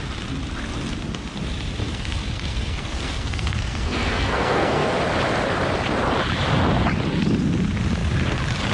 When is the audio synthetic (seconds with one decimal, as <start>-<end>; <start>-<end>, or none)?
1.8-4.9